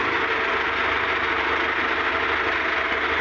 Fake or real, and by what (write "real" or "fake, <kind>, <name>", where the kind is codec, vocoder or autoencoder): real